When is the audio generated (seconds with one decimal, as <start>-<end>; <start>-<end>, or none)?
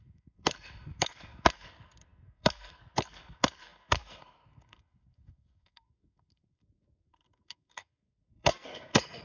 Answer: 0.0-9.2